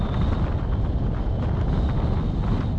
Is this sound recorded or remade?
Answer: recorded